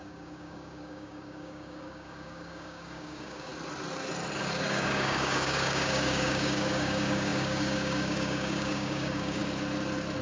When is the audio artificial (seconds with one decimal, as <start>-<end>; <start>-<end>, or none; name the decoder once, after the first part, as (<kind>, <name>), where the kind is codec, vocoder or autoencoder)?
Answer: 0.0-3.5 (codec, DAC); 4.6-9.4